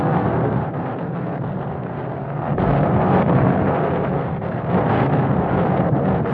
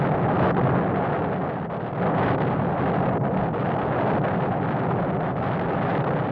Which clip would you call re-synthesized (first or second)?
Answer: first